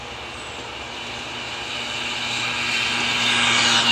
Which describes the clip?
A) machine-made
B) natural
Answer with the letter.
B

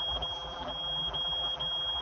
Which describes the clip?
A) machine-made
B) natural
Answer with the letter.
A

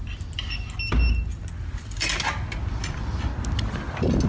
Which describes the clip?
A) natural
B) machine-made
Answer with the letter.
A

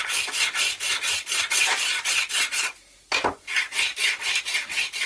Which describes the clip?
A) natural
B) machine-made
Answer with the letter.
A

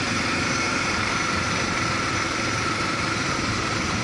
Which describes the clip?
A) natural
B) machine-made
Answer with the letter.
B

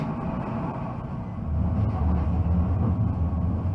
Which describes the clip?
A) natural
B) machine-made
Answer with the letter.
A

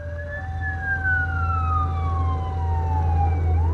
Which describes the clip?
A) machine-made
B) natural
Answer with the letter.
B